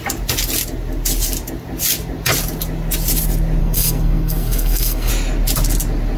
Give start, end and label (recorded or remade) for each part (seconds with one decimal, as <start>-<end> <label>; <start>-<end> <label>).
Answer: 0.0-3.6 recorded; 3.6-5.1 remade; 5.1-6.2 recorded